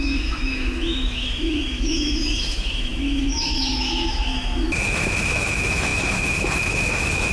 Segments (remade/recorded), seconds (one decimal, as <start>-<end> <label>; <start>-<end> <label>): 0.0-7.3 remade